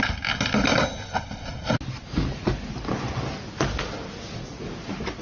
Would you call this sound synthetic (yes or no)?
no